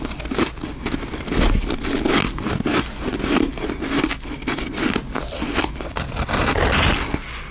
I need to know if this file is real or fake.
real